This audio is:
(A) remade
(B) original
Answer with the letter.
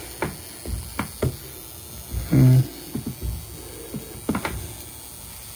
B